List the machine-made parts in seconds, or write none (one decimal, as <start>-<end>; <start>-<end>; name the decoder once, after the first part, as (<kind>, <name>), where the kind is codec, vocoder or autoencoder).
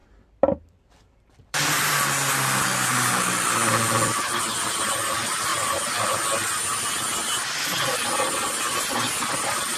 0.0-1.9 (vocoder, BigVGAN v2)